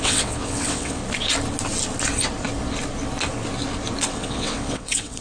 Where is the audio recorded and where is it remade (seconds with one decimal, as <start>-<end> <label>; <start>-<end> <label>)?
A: 0.0-1.0 remade; 1.0-4.1 recorded; 4.1-5.2 remade